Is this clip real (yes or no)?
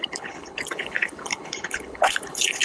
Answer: no